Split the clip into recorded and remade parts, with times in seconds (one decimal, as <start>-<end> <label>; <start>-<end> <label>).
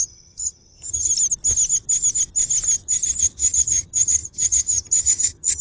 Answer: 0.0-1.1 remade; 1.1-3.2 recorded; 3.2-5.6 remade